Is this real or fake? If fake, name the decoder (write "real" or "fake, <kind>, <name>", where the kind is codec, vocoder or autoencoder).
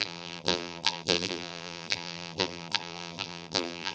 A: fake, vocoder, BigVGAN v2